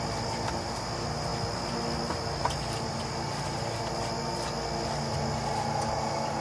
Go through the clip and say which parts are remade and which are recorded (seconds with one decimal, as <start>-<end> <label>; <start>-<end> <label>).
0.0-6.4 recorded